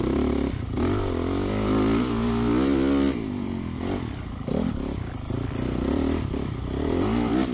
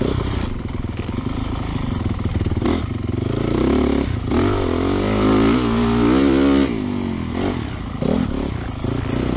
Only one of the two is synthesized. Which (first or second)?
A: first